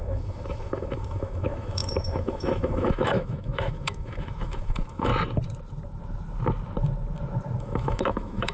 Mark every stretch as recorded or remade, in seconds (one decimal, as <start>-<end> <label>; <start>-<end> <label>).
0.0-5.1 remade; 5.1-7.6 recorded; 7.6-8.5 remade